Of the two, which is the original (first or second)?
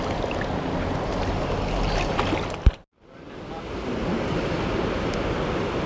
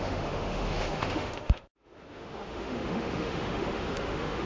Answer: first